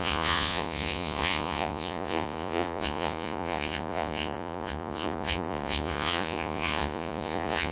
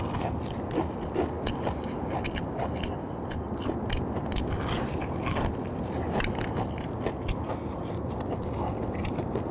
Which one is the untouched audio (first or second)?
second